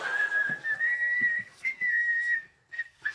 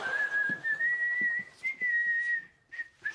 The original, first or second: second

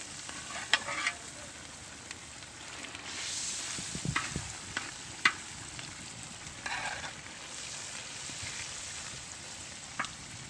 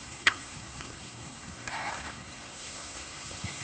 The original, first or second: first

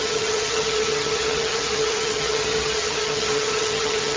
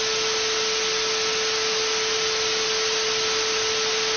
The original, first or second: second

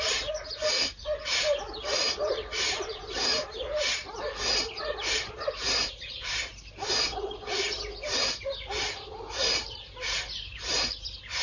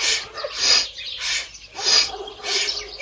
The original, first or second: second